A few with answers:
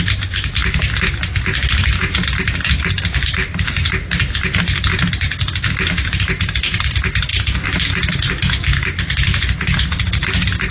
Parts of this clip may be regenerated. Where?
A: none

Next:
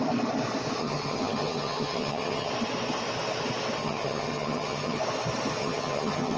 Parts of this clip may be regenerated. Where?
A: 0.8-2.5 (vocoder, HiFi-GAN); 3.8-5.0; 5.6-6.4